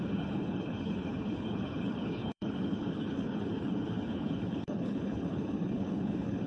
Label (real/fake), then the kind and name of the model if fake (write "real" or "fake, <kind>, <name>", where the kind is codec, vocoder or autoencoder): fake, codec, HILCodec